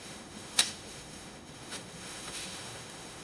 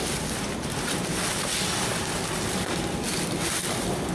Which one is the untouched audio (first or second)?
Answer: second